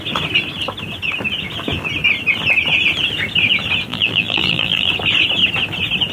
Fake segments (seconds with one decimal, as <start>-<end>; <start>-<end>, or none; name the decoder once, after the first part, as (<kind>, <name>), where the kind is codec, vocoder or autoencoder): 3.9-4.9 (vocoder, BigVGAN v2)